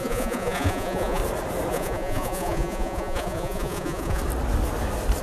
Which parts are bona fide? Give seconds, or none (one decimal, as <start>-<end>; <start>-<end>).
1.2-1.7; 4.2-5.2